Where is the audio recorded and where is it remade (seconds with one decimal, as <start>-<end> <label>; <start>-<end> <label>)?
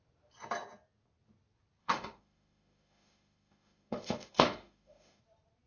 0.0-1.8 recorded; 1.8-5.2 remade; 5.2-5.7 recorded